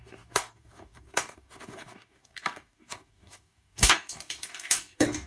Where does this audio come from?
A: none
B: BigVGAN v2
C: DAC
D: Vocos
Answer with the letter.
C